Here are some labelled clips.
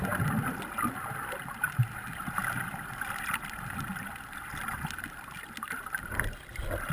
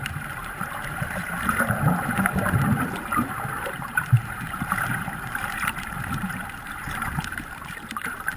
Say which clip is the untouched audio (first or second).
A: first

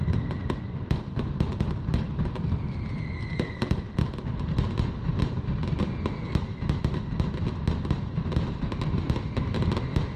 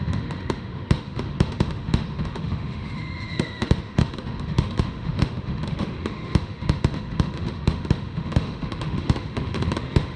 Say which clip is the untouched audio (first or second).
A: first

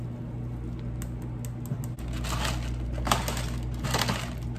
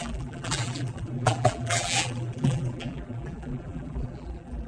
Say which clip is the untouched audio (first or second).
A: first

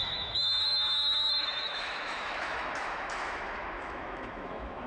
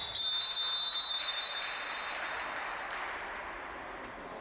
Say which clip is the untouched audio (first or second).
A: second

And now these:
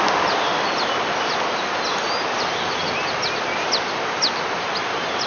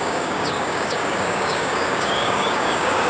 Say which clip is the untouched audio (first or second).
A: first